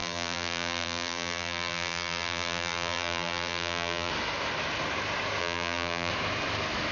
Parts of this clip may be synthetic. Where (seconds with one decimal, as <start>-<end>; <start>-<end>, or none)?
0.0-4.1; 5.4-6.1